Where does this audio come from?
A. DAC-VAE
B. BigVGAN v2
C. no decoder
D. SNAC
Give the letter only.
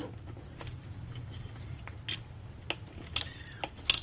C